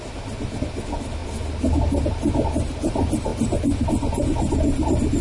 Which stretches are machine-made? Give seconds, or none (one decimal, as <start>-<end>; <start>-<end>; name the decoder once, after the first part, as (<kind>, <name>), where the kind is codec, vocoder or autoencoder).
none